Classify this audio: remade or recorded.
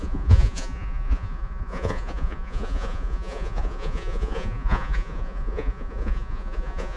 remade